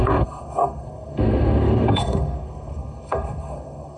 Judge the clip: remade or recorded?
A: remade